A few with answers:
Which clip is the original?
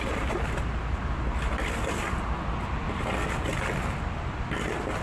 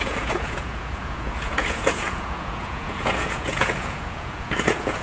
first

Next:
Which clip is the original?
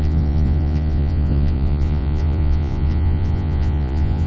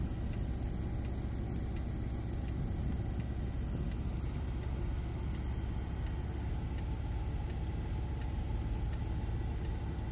second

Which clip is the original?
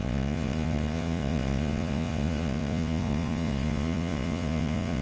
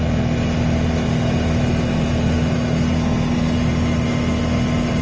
second